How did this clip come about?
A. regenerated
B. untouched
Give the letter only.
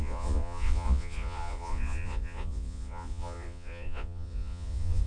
A